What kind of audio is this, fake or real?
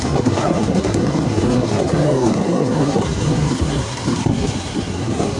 fake